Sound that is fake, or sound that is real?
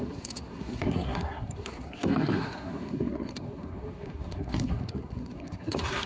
fake